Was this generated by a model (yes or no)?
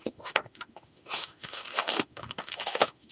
yes